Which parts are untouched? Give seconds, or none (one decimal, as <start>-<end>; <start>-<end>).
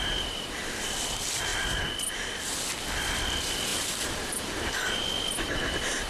0.0-3.7; 4.6-6.1